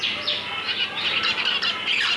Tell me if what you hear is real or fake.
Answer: real